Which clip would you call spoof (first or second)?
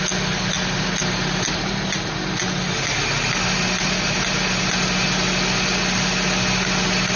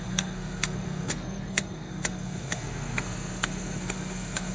second